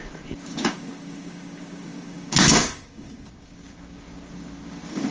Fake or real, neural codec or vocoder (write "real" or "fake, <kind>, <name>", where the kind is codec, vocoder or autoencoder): fake, codec, DAC